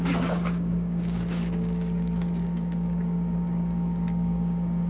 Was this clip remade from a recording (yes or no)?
yes